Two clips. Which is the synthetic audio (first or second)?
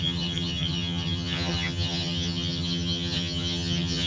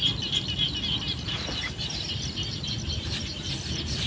first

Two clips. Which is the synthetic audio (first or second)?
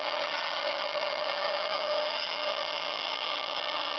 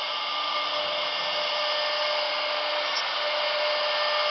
first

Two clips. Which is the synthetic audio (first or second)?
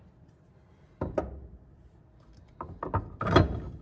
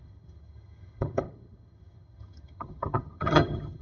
second